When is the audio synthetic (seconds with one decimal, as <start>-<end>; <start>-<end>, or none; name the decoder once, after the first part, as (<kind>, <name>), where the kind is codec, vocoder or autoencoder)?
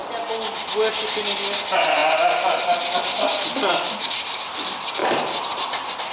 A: none